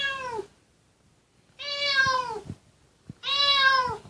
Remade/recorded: recorded